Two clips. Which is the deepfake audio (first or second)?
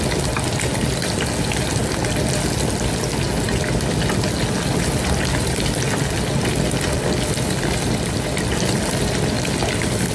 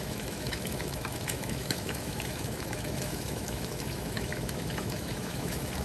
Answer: second